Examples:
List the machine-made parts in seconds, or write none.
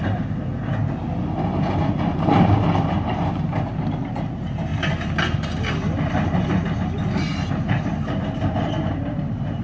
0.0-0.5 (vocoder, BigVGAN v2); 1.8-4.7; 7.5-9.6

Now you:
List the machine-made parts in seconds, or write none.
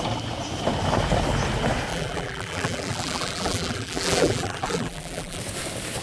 1.9-5.4 (vocoder, BigVGAN v2)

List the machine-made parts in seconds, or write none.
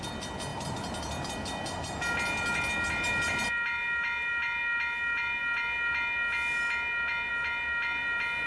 none